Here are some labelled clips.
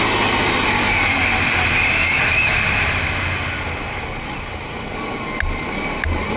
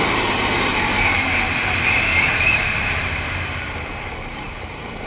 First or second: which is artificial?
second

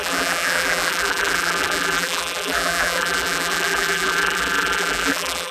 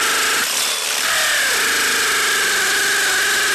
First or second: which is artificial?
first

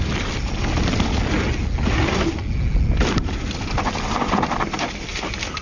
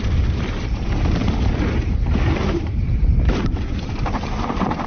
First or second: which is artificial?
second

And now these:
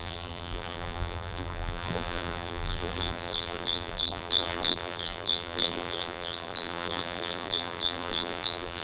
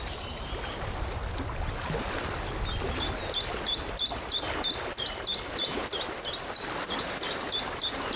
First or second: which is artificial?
first